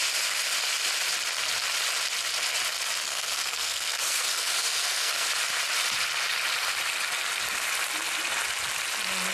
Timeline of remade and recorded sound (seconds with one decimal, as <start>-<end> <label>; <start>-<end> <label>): 0.0-3.1 recorded; 3.1-5.3 remade; 5.3-9.3 recorded

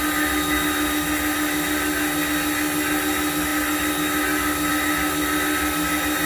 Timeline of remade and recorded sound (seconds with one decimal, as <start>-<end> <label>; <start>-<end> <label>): 0.0-6.3 recorded